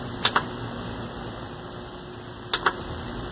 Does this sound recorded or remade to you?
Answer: recorded